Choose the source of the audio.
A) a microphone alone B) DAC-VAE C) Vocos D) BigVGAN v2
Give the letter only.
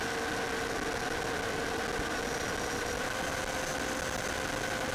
A